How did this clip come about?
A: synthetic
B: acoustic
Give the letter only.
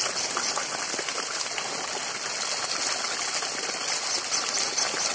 B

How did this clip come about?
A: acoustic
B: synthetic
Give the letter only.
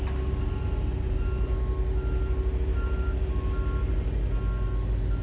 A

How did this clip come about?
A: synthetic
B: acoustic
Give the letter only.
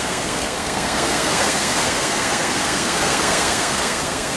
A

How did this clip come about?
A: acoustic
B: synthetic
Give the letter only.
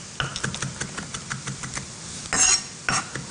A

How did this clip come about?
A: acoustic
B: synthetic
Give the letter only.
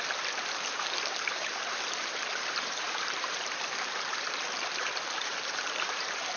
B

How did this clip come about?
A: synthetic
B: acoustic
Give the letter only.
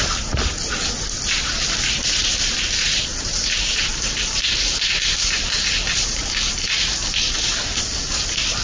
B